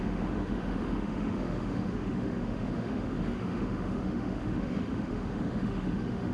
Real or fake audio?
fake